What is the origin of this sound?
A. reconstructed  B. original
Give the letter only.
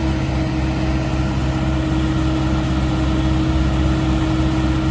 B